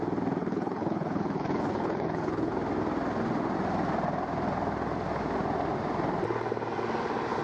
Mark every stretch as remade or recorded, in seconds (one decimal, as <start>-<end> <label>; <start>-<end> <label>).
0.0-0.4 recorded; 0.4-2.5 remade; 2.5-7.4 recorded